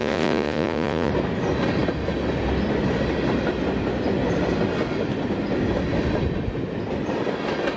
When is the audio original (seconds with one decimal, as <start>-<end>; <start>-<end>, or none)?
1.1-7.8